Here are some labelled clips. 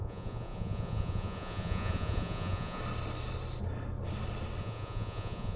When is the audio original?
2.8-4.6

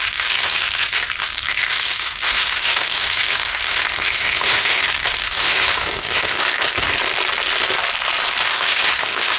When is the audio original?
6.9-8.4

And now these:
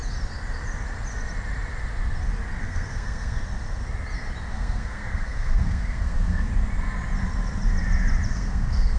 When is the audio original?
0.0-2.6; 3.4-4.5; 6.5-8.3